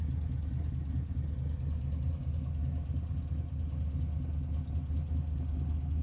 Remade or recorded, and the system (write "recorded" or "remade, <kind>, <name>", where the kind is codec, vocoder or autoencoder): recorded